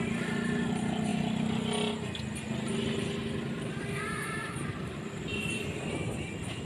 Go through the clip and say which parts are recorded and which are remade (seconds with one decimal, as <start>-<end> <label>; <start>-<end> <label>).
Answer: 0.0-4.4 recorded; 4.4-5.6 remade; 5.6-6.6 recorded